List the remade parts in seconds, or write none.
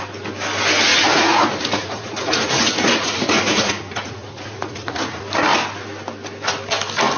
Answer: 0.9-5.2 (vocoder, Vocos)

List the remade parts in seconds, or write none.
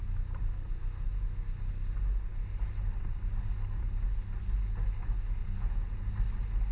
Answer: 5.4-6.1 (vocoder, Vocos)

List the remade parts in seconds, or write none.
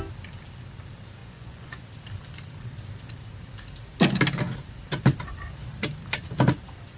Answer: 1.2-1.8 (vocoder, Vocos)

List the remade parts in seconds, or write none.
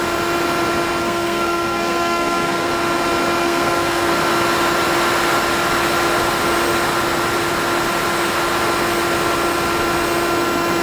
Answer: 1.0-2.7 (codec, SNAC); 3.4-4.1